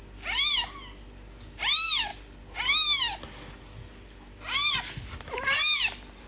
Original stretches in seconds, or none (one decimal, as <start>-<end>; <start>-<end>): 0.0-6.3